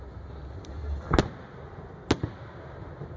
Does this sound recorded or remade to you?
recorded